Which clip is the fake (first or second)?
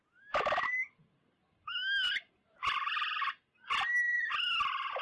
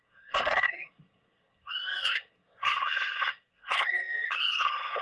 second